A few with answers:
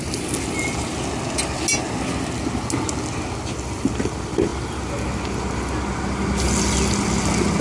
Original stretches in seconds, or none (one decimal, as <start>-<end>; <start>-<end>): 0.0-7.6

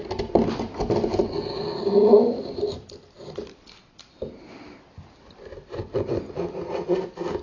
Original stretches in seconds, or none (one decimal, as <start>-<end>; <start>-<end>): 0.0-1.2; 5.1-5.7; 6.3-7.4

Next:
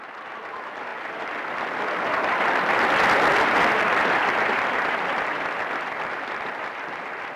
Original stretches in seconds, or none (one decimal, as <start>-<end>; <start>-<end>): 0.0-7.4

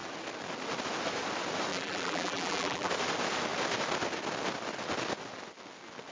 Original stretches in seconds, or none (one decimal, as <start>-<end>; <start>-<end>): 0.0-1.7; 2.9-6.1